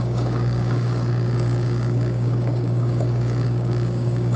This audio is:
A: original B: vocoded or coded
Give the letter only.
B